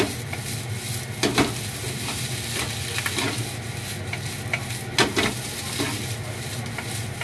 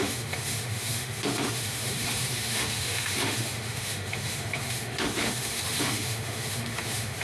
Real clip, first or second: first